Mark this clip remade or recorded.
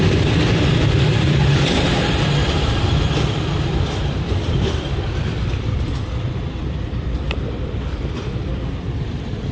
remade